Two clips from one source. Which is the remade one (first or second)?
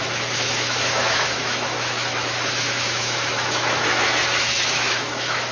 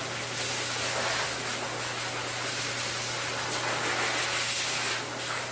first